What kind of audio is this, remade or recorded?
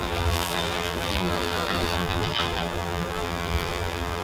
remade